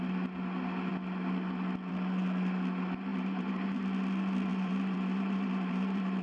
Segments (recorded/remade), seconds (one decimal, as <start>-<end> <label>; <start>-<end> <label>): 0.0-3.1 recorded; 3.1-3.8 remade; 3.8-4.5 recorded; 4.5-6.2 remade